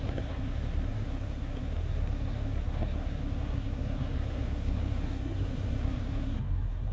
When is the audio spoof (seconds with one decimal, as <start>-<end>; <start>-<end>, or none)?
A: 0.0-6.9